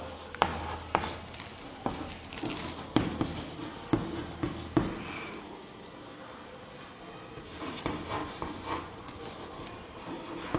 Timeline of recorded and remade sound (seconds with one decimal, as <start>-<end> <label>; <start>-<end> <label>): 0.0-8.2 recorded; 8.2-9.3 remade; 9.3-10.6 recorded